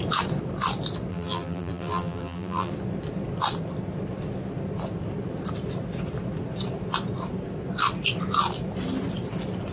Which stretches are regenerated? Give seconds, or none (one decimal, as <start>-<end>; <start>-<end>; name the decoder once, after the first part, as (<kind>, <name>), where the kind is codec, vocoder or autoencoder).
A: 1.1-2.7 (vocoder, BigVGAN v2)